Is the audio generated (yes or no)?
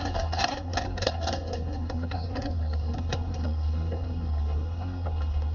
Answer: yes